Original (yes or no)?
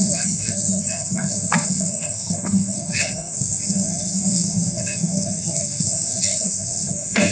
no